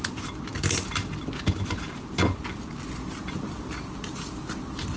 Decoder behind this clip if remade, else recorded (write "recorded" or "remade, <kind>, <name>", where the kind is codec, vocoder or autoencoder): recorded